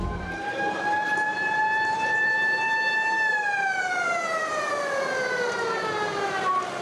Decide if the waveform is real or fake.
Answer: fake